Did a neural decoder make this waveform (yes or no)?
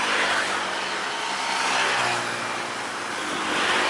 no